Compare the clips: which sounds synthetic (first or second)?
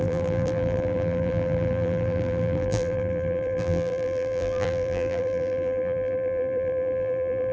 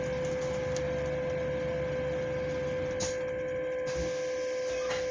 first